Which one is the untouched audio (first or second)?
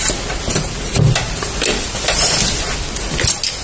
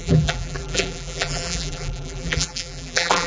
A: first